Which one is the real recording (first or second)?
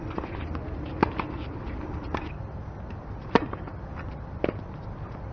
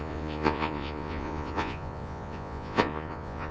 first